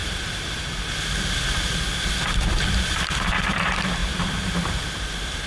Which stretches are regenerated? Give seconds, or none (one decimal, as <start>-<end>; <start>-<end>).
3.3-4.0; 5.0-5.5